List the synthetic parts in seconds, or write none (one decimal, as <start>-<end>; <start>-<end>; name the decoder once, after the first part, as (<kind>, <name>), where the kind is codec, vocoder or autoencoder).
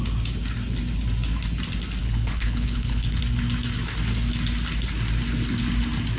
2.0-3.2 (codec, HILCodec)